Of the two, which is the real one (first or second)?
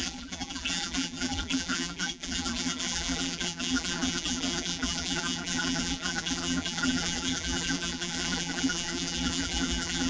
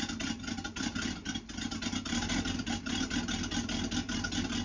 second